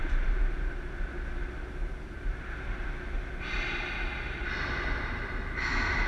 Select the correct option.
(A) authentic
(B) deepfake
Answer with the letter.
A